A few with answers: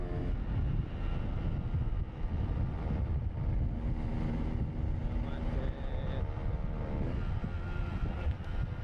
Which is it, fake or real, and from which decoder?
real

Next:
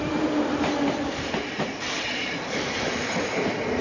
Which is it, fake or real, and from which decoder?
fake, vocoder, BigVGAN v2